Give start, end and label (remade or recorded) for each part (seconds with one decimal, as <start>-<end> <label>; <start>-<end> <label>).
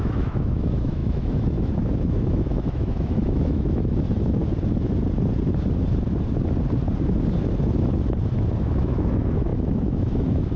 0.0-4.4 remade; 4.4-8.6 recorded; 8.6-10.6 remade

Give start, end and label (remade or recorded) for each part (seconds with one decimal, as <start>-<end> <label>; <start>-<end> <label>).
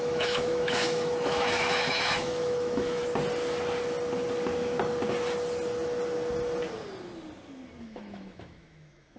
0.0-3.0 remade; 3.0-7.8 recorded; 7.8-9.2 remade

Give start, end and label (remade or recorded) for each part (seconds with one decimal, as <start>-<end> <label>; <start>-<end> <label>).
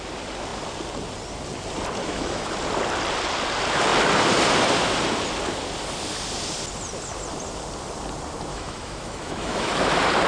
0.0-2.0 recorded; 2.0-2.5 remade; 2.5-8.5 recorded; 8.5-9.7 remade; 9.7-10.3 recorded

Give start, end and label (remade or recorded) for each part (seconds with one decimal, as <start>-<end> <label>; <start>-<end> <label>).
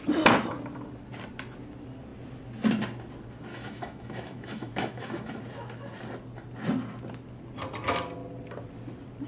0.0-3.5 recorded; 3.5-5.4 remade; 5.4-9.3 recorded